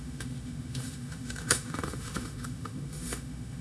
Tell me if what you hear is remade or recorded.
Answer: remade